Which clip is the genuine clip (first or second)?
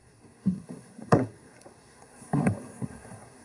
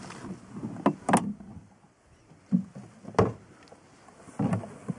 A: second